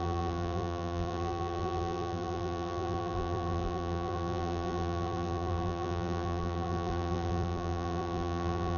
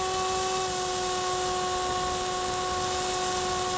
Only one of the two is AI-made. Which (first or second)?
first